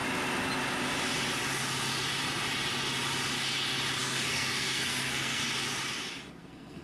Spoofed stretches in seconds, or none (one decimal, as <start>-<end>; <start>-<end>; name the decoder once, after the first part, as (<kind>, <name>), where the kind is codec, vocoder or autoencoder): 4.0-5.4 (codec, SNAC); 6.1-6.8